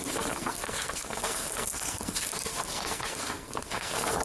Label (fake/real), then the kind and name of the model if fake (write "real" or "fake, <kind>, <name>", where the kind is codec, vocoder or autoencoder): fake, codec, SNAC